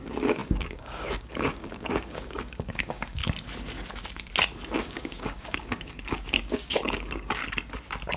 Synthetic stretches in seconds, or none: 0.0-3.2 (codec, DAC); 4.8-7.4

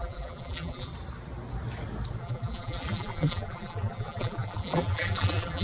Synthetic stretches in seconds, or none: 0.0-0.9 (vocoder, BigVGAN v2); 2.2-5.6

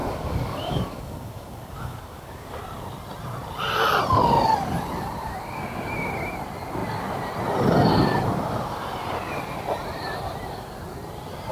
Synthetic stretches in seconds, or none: 0.0-2.6 (codec, DAC)

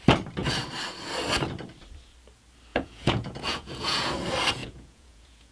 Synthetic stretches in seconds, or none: 2.7-4.1 (vocoder, Vocos); 4.6-5.5

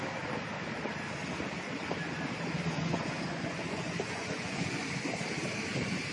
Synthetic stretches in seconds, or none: 2.7-4.8 (vocoder, Vocos)

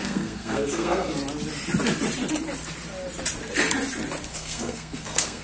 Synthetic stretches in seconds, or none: 0.0-1.1 (codec, SNAC); 4.3-5.4

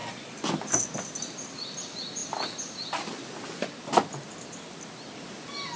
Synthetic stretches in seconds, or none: none